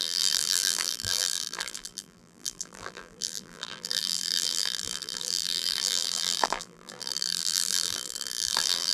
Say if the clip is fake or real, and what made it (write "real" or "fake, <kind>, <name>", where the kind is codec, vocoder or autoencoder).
fake, vocoder, BigVGAN v2